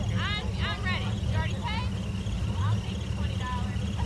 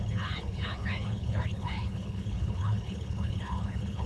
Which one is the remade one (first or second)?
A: second